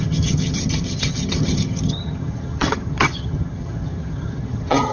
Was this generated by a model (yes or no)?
yes